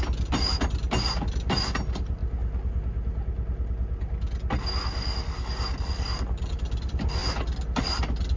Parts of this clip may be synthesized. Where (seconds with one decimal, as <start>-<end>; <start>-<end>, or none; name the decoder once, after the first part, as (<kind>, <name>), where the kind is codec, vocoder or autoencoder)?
0.0-0.5 (vocoder, BigVGAN v2); 1.3-2.2; 5.8-7.2; 7.8-8.4